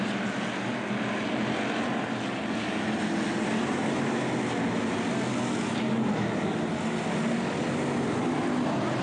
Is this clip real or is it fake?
real